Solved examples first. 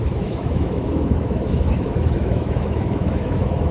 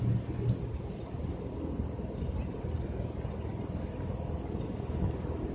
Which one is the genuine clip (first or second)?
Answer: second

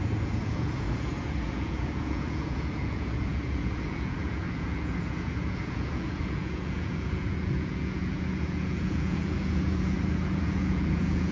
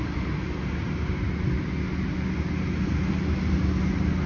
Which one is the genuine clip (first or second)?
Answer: second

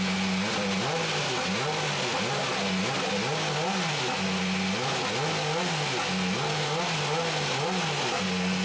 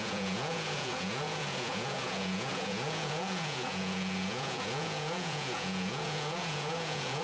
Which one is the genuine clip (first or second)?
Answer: first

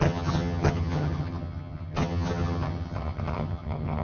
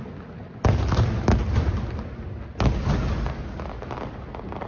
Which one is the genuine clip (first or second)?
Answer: second